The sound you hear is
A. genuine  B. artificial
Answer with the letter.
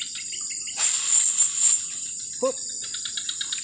A